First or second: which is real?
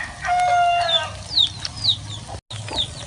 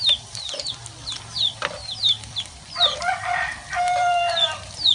first